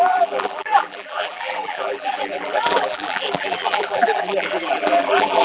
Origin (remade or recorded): remade